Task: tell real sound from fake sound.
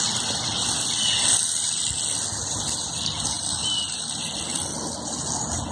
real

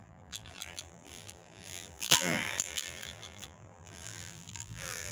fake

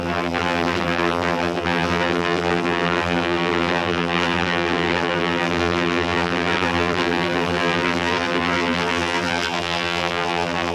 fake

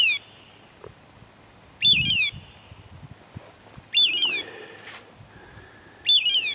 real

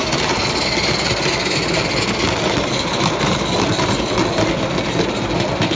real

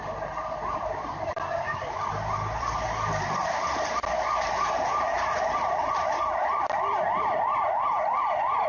fake